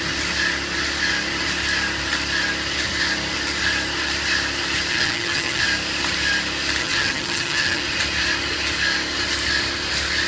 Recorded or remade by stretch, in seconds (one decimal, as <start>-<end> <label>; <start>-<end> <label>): 0.0-4.9 recorded; 4.9-5.6 remade; 5.6-6.8 recorded; 6.8-7.8 remade; 7.8-10.3 recorded